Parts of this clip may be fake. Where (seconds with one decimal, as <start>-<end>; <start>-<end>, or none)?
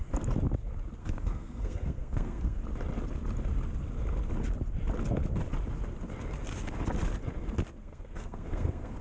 1.0-2.6; 7.8-9.0